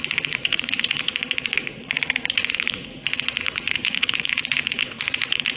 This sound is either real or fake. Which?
fake